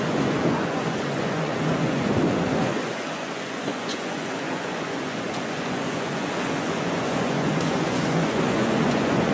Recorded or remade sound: remade